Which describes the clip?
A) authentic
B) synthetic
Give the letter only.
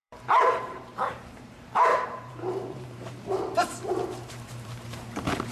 B